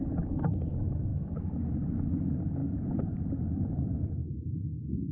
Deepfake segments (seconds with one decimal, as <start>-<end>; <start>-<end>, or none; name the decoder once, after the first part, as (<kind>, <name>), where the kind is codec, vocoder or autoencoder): 2.6-3.2 (vocoder, BigVGAN v2); 4.2-5.1